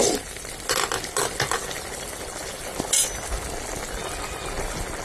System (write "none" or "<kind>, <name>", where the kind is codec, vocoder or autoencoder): none